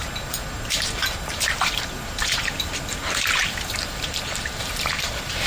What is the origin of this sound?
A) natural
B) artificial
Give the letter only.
B